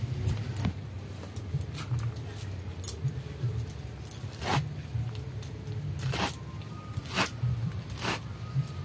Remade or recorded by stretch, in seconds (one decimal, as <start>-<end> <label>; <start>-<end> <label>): 0.0-8.8 recorded